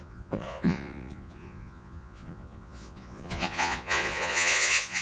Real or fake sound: fake